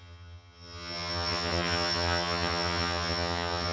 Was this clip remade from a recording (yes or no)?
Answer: yes